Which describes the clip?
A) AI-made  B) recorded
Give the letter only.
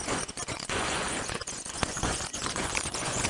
A